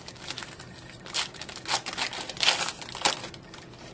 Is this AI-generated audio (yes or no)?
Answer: no